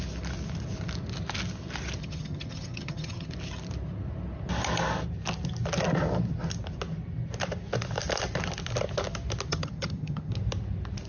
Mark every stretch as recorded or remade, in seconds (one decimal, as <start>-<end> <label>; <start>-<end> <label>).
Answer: 0.0-2.0 recorded; 2.0-3.3 remade; 3.3-9.5 recorded; 9.5-10.3 remade; 10.3-11.1 recorded